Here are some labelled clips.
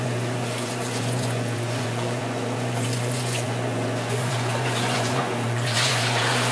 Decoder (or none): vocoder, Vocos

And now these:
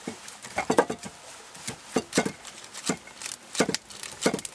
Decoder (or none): none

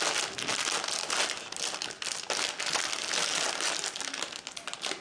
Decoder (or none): none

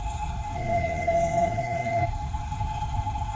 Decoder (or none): codec, SNAC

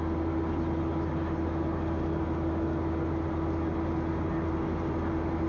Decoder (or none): none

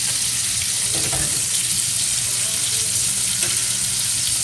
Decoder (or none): none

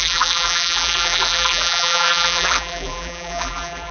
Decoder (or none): vocoder, BigVGAN v2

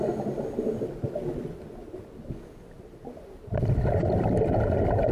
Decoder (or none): none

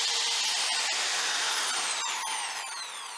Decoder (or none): none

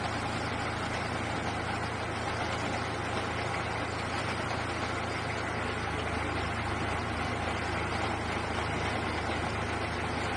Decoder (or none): none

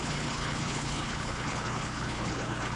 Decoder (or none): codec, HILCodec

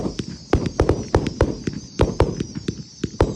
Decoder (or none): none